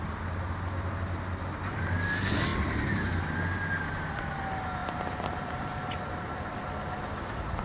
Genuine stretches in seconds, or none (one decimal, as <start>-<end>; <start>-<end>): 0.0-2.5; 3.1-4.8; 6.4-7.6